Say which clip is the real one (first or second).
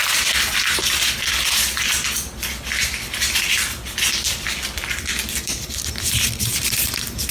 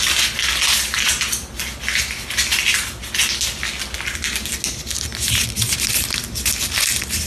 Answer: second